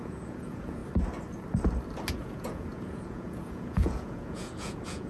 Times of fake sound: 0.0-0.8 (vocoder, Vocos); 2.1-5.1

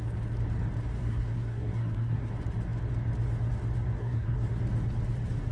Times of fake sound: 1.0-2.3 (codec, SNAC); 4.0-4.6

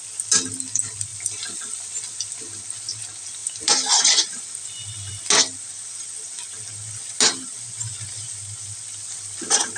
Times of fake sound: none

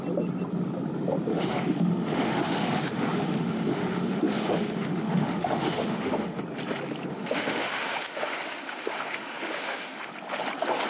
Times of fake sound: 1.3-6.4 (autoencoder, DAC-VAE); 7.1-10.1

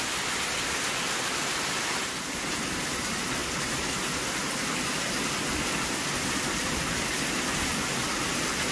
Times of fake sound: none

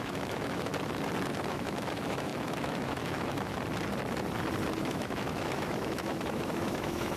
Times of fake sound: 0.0-0.7 (autoencoder, DAC-VAE); 1.5-3.5; 4.8-7.2

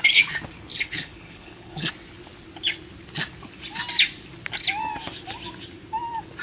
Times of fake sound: 0.7-1.9 (codec, HILCodec)